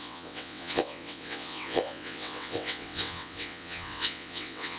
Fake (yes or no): yes